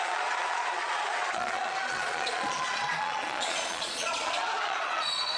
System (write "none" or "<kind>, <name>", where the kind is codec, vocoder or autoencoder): vocoder, Vocos